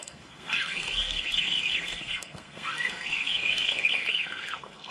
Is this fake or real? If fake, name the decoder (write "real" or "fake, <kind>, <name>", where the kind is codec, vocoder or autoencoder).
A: fake, codec, SNAC